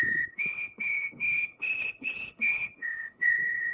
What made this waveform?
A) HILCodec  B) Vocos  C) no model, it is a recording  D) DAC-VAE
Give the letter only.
A